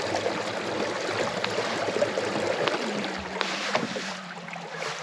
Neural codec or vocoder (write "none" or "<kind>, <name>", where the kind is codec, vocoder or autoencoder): none